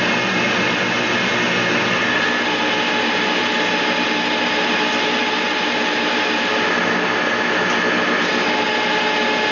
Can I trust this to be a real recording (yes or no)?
yes